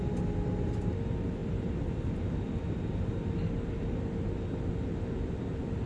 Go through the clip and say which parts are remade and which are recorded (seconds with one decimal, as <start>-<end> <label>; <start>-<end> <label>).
0.0-5.9 recorded